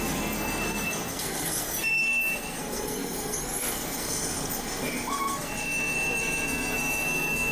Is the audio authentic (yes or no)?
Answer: no